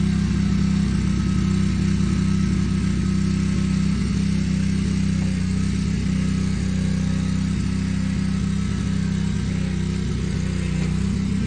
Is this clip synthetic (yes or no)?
no